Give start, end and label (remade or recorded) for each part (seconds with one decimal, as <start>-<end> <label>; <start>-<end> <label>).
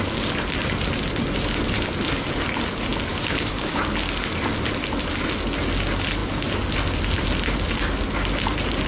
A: 0.0-3.1 recorded; 3.1-3.8 remade; 3.8-8.9 recorded